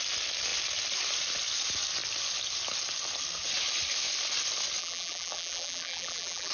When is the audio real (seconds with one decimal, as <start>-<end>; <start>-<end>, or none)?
0.0-4.8